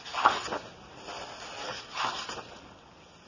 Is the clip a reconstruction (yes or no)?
no